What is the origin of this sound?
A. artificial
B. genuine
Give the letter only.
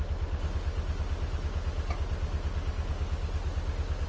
B